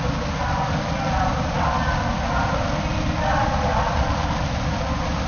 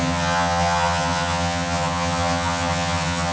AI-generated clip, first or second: second